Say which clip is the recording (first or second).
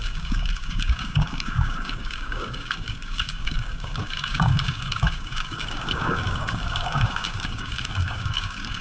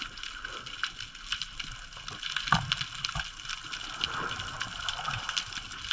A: second